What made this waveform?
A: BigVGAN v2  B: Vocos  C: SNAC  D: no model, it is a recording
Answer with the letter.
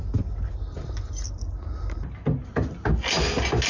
D